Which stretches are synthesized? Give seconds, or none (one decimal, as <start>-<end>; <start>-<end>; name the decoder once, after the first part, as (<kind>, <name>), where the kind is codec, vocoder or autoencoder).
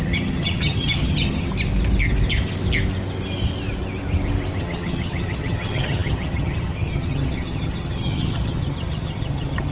0.0-1.5 (vocoder, HiFi-GAN); 4.6-9.7